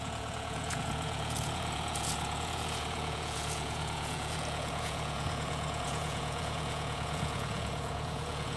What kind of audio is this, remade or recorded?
remade